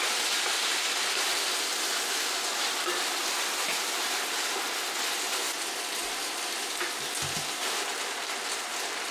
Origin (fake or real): real